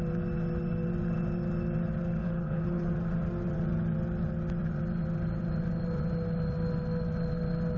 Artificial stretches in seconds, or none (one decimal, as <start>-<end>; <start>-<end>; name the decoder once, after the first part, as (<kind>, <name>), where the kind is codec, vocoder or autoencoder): 2.2-2.9 (codec, HILCodec)